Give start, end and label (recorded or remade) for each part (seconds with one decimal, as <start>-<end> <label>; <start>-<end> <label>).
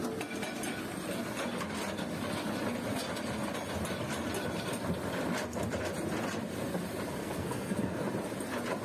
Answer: 0.0-7.2 recorded; 7.2-8.1 remade; 8.1-8.8 recorded